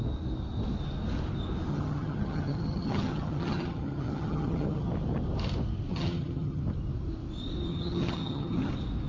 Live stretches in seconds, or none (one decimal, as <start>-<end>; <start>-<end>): 0.0-1.7; 4.9-5.9; 6.6-7.7; 8.7-9.1